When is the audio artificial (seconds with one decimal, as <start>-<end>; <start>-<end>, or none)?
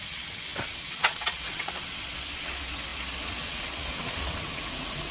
0.0-5.1